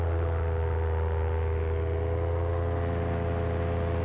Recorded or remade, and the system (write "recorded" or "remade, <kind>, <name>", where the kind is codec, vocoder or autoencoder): recorded